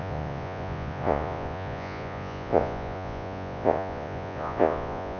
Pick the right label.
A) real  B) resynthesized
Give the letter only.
B